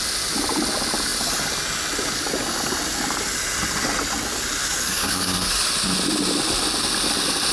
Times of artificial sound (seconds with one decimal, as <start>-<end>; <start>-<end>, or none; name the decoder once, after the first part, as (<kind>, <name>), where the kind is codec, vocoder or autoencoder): 4.6-5.7 (codec, DAC)